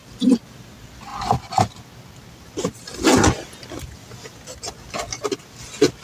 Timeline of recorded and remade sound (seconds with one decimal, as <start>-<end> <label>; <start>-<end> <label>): 0.0-6.0 recorded